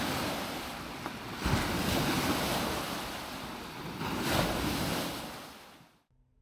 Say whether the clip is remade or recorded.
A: recorded